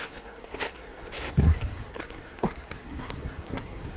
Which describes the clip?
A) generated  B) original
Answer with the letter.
A